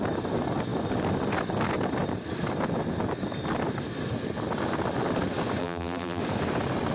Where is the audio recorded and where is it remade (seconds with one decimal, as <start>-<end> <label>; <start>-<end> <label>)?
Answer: 0.0-5.6 recorded; 5.6-6.2 remade; 6.2-6.9 recorded

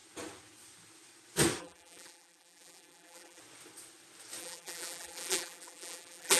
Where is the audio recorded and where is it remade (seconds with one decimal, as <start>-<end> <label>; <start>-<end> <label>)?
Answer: 0.0-1.6 recorded; 1.6-3.4 remade; 3.4-4.4 recorded; 4.4-6.4 remade

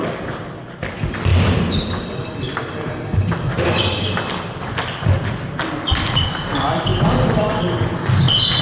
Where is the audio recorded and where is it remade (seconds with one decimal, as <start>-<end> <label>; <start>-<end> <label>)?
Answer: 0.0-8.6 recorded

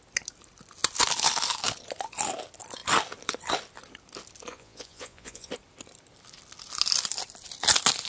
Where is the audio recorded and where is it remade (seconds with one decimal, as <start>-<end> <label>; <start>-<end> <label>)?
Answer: 0.0-4.5 recorded; 4.5-5.5 remade; 5.5-8.1 recorded

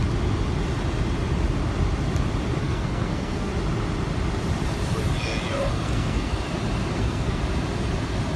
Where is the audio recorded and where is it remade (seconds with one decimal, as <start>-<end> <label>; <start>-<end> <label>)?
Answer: 0.0-2.6 recorded; 2.6-3.5 remade; 3.5-5.7 recorded; 5.7-6.3 remade; 6.3-6.9 recorded; 6.9-7.4 remade; 7.4-8.4 recorded

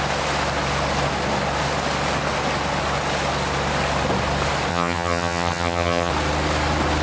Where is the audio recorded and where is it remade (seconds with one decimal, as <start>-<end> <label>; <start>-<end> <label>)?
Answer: 0.0-4.7 recorded; 4.7-6.1 remade; 6.1-7.0 recorded

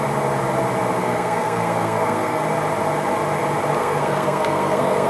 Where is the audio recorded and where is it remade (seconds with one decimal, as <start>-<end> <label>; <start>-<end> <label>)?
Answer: 0.0-1.0 recorded; 1.0-2.4 remade; 2.4-3.8 recorded; 3.8-5.1 remade